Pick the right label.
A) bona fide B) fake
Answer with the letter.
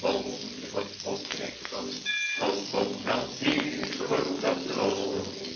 A